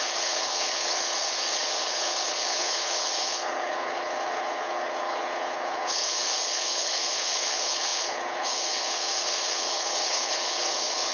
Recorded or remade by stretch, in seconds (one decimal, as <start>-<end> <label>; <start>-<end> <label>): 0.0-11.1 remade

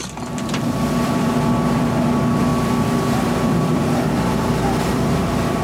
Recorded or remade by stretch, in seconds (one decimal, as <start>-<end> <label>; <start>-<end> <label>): 0.0-5.6 remade